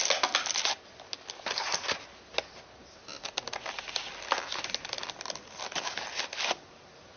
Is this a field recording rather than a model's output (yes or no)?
yes